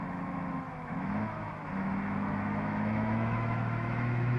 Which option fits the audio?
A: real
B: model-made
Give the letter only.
B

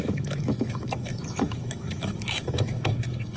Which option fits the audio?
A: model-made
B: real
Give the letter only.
A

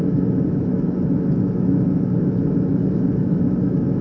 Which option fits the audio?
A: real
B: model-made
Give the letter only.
B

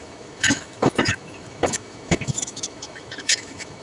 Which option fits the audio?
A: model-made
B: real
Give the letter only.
A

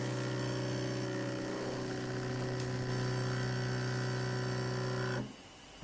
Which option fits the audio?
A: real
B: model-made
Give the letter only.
A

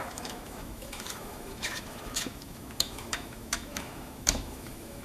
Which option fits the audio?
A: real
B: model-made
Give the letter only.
B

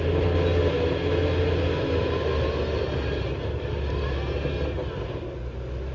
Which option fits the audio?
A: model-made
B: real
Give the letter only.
B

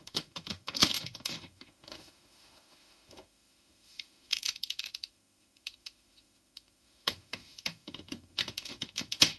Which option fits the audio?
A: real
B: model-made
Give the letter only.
B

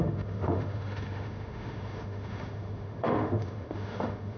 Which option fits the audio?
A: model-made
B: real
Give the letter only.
A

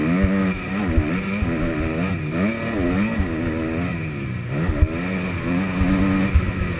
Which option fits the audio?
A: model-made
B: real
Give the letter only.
B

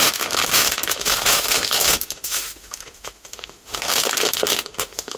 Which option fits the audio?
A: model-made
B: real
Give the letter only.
A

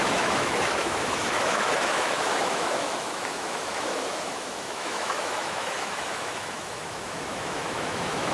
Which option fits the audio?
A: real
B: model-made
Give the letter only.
B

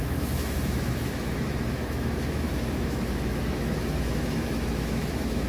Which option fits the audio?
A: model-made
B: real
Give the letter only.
A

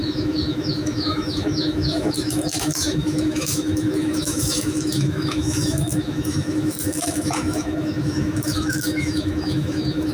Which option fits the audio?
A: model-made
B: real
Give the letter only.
A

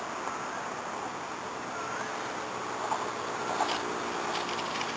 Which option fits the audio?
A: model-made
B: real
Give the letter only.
B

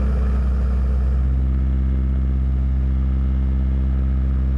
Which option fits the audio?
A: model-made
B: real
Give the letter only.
B